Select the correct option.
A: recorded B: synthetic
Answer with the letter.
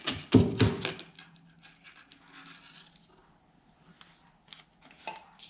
A